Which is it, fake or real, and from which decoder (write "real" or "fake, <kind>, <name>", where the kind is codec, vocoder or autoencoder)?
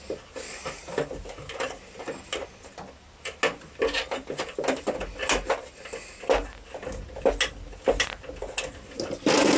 real